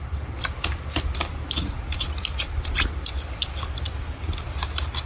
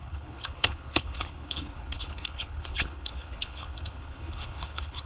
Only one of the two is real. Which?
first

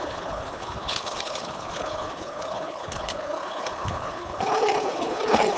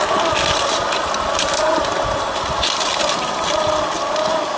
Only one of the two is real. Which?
second